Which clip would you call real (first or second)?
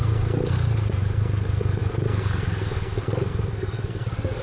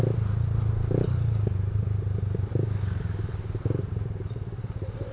second